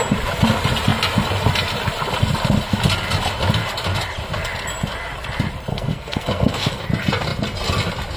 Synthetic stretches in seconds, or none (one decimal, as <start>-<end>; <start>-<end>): 5.7-6.8